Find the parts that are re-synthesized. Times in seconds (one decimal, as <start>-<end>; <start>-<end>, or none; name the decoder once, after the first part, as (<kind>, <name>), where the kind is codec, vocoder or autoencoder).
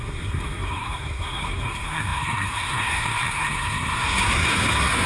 0.0-5.1 (codec, SNAC)